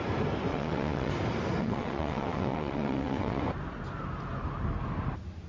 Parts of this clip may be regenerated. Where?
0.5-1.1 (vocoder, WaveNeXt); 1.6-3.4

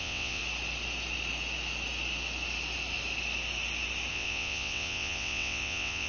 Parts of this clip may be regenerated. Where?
0.0-0.4 (vocoder, WaveNeXt); 4.1-6.1

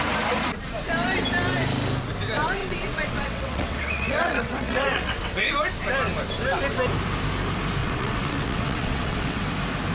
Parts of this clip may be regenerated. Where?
2.6-5.5 (vocoder, WaveNeXt); 7.8-9.4

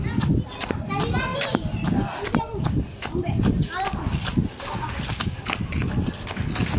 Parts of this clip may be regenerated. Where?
none

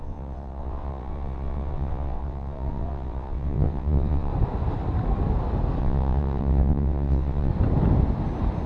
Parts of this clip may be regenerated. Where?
0.0-4.3 (vocoder, WaveNeXt); 5.8-7.5

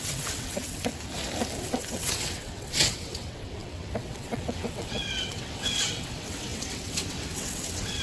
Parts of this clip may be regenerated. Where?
0.0-0.9 (vocoder, WaveNeXt); 1.6-8.0